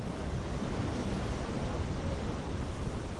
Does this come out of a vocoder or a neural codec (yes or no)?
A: no